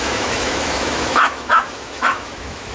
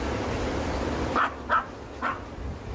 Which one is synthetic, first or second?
first